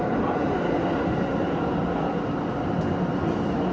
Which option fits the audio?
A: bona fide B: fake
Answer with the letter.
A